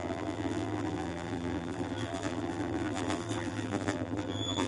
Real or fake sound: fake